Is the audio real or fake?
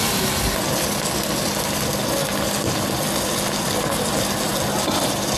real